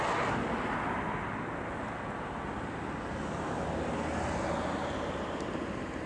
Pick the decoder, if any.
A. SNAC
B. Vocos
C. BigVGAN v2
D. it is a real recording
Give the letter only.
D